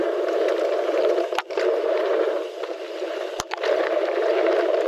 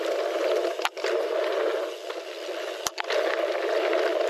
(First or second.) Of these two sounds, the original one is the second